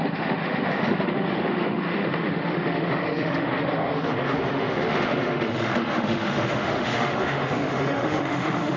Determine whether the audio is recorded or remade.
remade